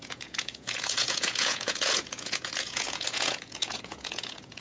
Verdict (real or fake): fake